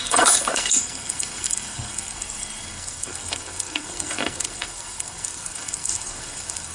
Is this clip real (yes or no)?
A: no